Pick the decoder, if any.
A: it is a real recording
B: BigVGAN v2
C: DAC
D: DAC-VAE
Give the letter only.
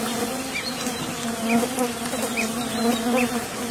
A